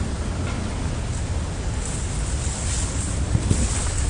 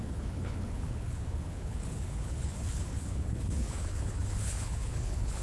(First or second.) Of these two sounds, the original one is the first